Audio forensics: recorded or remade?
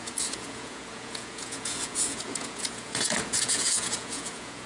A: remade